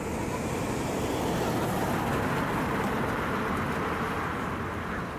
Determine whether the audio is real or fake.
real